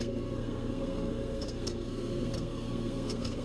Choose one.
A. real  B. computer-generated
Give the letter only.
B